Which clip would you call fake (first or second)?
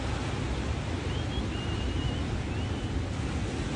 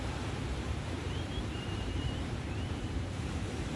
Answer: second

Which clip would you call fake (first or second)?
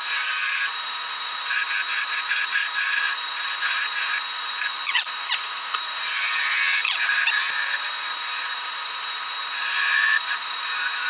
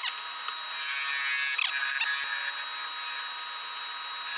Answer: first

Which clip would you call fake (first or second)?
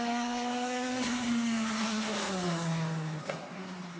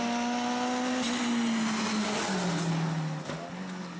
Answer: first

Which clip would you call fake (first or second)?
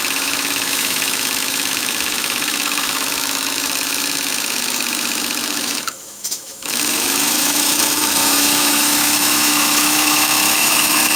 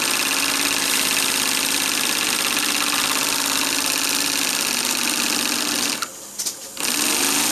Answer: first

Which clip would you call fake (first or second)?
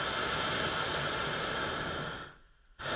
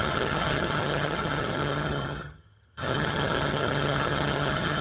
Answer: second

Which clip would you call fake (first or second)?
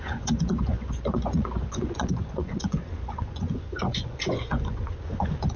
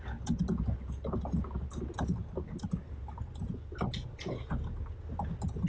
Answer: first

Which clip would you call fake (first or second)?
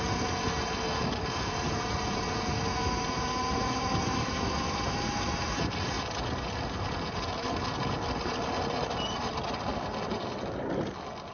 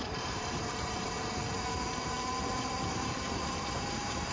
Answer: second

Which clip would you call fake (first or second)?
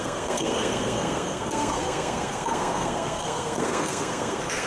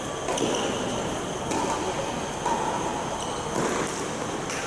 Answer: first